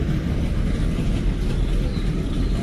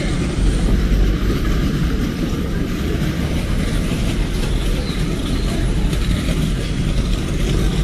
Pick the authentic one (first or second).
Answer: first